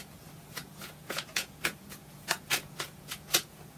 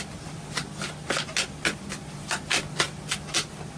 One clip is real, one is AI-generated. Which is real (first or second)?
second